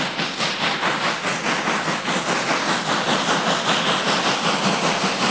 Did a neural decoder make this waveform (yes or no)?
no